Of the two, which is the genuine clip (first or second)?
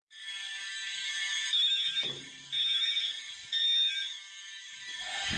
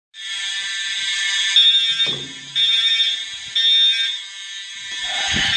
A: second